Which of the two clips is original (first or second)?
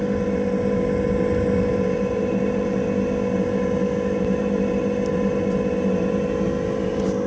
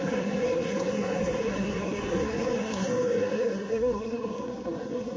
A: first